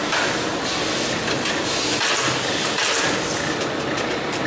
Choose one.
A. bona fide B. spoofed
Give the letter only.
A